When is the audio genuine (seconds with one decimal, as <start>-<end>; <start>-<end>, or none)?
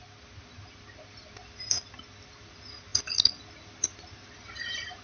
0.0-5.0